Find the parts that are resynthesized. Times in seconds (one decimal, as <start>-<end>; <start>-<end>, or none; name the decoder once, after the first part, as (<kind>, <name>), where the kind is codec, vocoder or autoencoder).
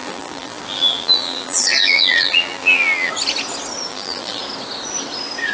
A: 0.0-3.1 (vocoder, BigVGAN v2); 3.9-4.4